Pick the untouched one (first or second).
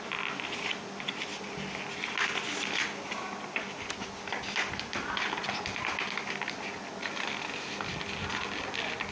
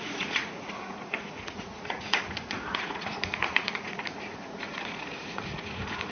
first